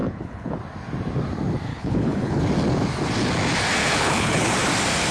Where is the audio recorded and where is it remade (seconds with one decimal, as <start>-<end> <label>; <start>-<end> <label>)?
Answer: 0.0-0.6 remade; 0.6-1.7 recorded; 1.7-2.4 remade; 2.4-3.8 recorded; 3.8-4.5 remade; 4.5-5.1 recorded